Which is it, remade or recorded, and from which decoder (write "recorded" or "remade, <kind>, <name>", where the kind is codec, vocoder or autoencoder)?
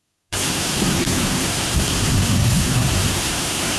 remade, codec, SNAC